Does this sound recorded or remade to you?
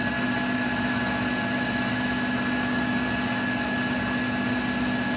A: recorded